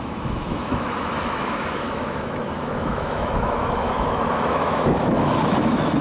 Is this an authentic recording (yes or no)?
no